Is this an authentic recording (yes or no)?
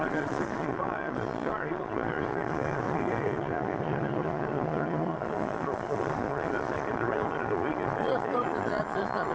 no